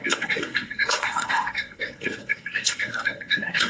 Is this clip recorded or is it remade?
remade